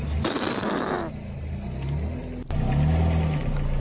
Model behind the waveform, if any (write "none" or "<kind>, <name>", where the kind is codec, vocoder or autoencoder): none